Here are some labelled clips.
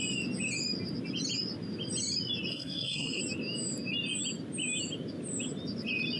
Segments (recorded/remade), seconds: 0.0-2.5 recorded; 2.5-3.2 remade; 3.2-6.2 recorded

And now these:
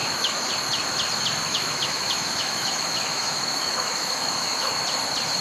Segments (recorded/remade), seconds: 0.0-0.5 remade; 0.5-1.5 recorded; 1.5-4.7 remade; 4.7-5.4 recorded